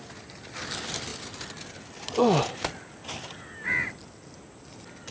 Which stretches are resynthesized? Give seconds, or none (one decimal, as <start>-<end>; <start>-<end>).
none